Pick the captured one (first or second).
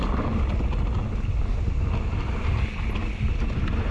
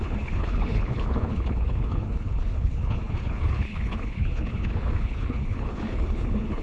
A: first